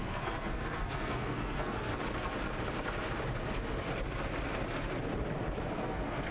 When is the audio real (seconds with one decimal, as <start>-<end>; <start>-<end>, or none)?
1.9-5.7